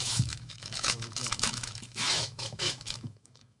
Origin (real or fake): fake